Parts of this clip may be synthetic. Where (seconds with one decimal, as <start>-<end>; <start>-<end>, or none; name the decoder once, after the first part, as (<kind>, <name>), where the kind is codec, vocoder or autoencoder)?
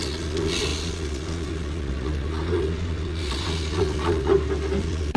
0.0-4.3 (vocoder, Vocos); 4.8-5.2